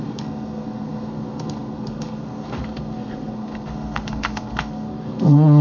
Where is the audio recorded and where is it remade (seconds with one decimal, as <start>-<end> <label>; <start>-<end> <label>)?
0.0-5.6 remade